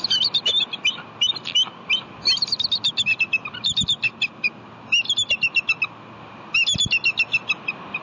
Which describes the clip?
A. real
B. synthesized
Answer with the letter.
A